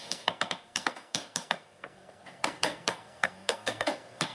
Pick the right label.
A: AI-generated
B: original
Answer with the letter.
A